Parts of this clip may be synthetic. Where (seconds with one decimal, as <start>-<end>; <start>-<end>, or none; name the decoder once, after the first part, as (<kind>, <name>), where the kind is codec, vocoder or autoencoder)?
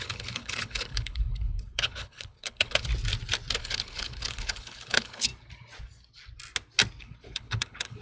0.0-2.9 (codec, HILCodec); 3.6-5.3; 7.0-8.0